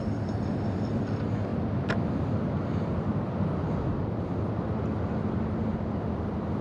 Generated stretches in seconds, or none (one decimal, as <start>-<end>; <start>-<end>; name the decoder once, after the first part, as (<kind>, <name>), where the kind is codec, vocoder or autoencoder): none